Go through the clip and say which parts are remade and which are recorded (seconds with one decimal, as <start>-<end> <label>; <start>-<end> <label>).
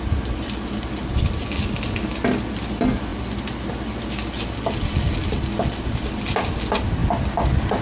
0.0-7.8 recorded